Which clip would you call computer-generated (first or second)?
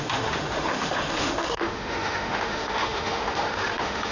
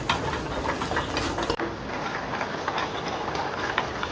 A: first